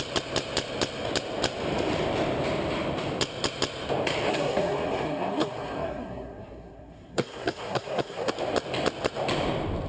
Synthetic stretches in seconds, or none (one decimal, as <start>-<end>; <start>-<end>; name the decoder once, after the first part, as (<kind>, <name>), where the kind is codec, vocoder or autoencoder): 4.3-8.3 (codec, SNAC)